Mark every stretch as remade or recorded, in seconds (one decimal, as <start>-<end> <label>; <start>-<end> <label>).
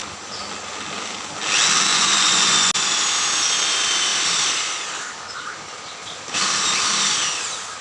0.0-1.9 recorded; 1.9-2.7 remade; 2.7-7.8 recorded